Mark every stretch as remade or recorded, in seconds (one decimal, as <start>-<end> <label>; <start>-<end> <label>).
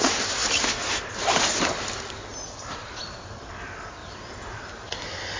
0.0-4.0 recorded; 4.0-4.6 remade; 4.6-5.4 recorded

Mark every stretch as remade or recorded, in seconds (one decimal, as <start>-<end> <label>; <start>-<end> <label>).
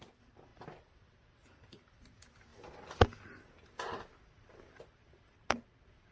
0.0-6.1 recorded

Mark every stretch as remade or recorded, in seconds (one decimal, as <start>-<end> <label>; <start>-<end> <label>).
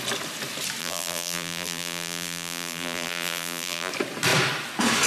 0.0-0.8 recorded; 0.8-3.9 remade; 3.9-5.1 recorded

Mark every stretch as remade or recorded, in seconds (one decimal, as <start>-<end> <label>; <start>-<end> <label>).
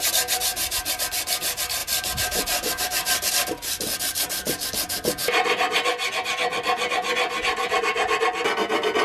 0.0-0.5 recorded; 0.5-1.0 remade; 1.0-1.8 recorded; 1.8-3.3 remade; 3.3-9.0 recorded